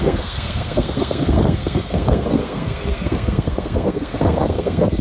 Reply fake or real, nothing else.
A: fake